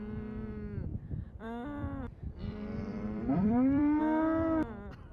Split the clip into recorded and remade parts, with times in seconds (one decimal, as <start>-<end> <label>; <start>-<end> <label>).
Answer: 0.0-0.9 recorded; 0.9-4.0 remade; 4.0-5.1 recorded